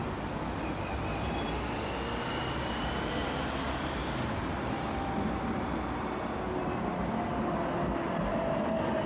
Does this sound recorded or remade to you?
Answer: recorded